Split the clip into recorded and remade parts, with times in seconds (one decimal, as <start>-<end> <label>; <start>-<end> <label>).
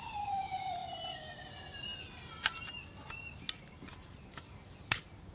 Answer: 0.0-0.8 remade; 0.8-3.9 recorded; 3.9-5.3 remade